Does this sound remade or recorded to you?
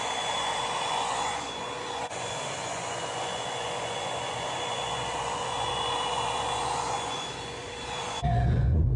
remade